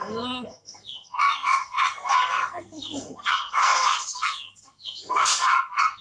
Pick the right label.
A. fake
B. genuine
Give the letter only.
A